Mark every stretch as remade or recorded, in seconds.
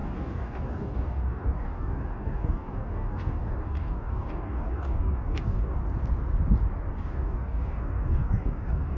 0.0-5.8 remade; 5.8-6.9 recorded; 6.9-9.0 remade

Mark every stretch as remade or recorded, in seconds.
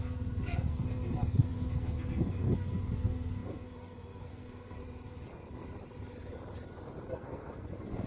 0.0-4.8 remade; 4.8-7.1 recorded; 7.1-8.1 remade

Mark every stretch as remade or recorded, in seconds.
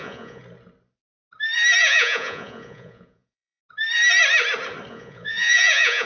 0.0-0.4 remade; 0.4-1.8 recorded; 1.8-3.6 remade; 3.6-4.9 recorded; 4.9-6.1 remade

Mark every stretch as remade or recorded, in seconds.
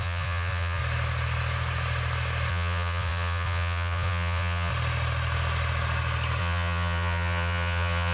0.0-0.8 remade; 0.8-2.5 recorded; 2.5-4.7 remade; 4.7-6.4 recorded; 6.4-8.1 remade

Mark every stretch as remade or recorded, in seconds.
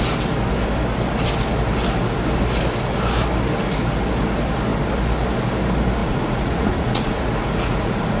0.0-6.0 recorded; 6.0-8.2 remade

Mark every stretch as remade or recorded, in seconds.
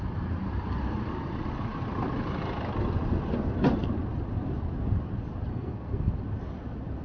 0.0-5.5 recorded; 5.5-6.1 remade; 6.1-7.0 recorded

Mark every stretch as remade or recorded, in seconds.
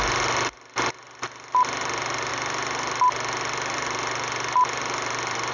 0.0-5.5 recorded